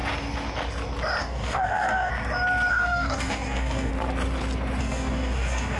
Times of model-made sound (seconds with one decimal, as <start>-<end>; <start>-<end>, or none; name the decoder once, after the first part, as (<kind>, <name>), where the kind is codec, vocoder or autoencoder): 1.2-2.1 (codec, DAC); 2.7-3.9; 4.8-5.8